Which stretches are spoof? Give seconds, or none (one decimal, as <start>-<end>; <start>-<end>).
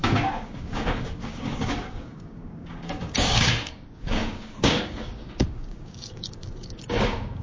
0.0-7.4